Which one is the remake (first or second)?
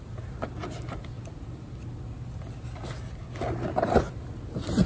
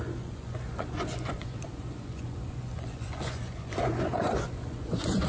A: second